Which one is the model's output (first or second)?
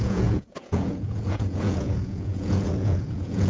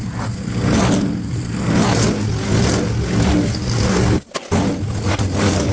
first